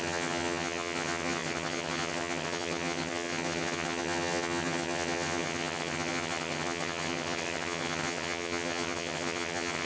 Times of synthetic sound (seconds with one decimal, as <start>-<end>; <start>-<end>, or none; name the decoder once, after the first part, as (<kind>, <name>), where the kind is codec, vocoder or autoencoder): 0.0-9.9 (vocoder, HiFi-GAN)